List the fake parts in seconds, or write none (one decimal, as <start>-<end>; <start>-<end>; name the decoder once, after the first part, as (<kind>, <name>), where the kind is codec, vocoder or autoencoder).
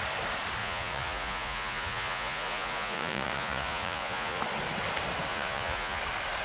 0.6-4.4 (vocoder, Vocos); 5.3-6.0